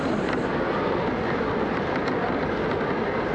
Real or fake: real